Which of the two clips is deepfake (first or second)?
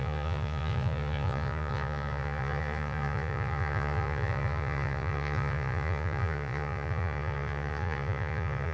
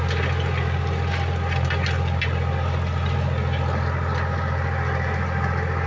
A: first